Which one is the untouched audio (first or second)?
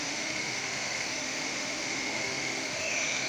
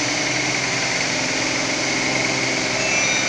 second